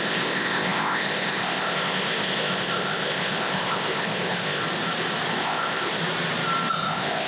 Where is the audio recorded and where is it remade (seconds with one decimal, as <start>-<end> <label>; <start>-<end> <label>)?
0.0-4.6 remade; 4.6-5.4 recorded; 5.4-6.0 remade; 6.0-6.7 recorded; 6.7-7.3 remade